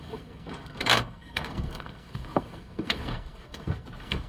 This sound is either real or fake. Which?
fake